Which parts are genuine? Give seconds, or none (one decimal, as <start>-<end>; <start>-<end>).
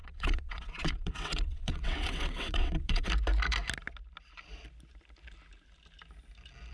3.1-6.7